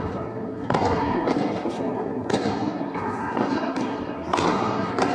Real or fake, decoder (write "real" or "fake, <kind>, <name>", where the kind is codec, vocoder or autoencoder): fake, codec, SNAC